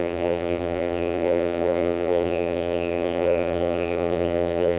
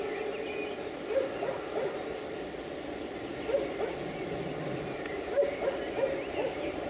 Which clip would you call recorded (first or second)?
second